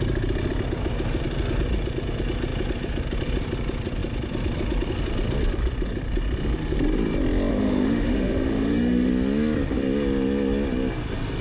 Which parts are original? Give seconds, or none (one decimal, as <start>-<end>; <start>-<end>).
0.0-7.5; 9.1-11.4